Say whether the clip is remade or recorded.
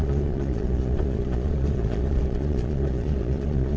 remade